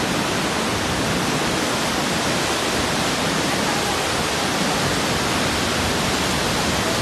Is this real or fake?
real